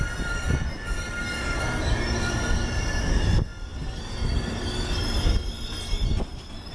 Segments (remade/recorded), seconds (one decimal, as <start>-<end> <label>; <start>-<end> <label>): 0.0-6.7 recorded